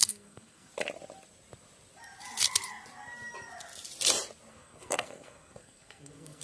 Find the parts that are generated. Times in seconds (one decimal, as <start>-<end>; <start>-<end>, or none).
0.0-0.7; 4.5-6.4